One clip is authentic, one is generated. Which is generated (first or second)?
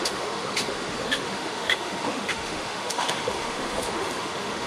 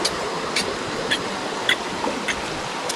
first